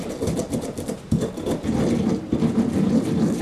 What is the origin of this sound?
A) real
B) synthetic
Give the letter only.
A